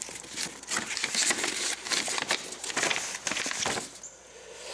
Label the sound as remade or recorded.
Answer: recorded